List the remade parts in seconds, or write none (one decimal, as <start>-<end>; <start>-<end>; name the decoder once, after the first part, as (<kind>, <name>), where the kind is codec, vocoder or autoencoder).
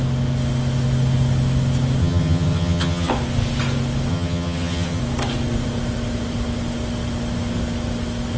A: 2.0-3.1 (vocoder, HiFi-GAN); 4.1-5.0